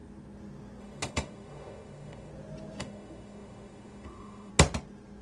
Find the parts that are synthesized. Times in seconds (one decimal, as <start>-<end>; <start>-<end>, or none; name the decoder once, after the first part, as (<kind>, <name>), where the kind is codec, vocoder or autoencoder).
0.8-2.3 (autoencoder, DAC-VAE); 2.8-4.5